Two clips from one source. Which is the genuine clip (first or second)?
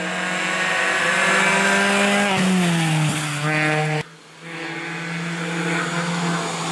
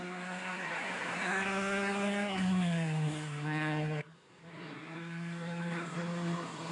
first